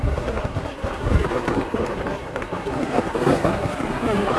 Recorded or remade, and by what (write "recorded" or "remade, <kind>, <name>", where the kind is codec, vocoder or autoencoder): remade, codec, SNAC